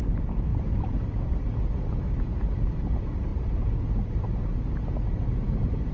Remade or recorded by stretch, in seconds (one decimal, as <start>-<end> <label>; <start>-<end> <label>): 0.0-5.9 recorded